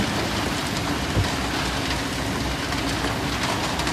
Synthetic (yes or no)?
no